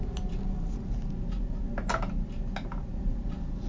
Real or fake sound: real